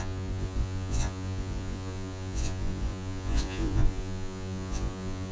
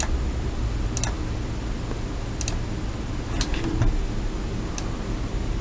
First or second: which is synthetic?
first